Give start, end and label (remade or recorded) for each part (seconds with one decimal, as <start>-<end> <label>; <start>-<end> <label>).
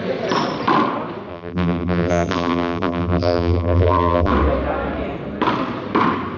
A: 0.0-1.3 recorded; 1.3-4.3 remade; 4.3-6.4 recorded